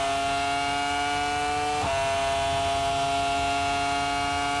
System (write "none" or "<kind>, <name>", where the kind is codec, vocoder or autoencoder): none